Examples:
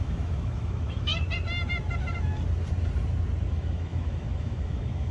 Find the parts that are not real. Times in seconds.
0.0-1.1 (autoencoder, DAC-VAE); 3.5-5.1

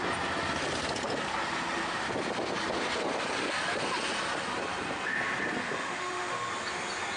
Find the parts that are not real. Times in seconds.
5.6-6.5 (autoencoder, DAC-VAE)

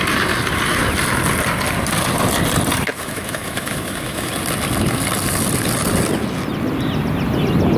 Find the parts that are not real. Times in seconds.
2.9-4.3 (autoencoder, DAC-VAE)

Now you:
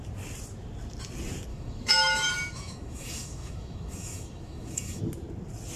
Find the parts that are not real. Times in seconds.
1.5-5.0 (autoencoder, DAC-VAE)